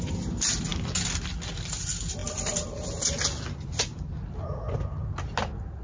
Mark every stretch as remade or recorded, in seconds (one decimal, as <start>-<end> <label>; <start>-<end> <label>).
0.0-5.8 recorded